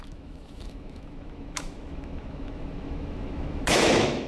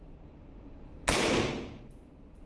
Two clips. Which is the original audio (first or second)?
second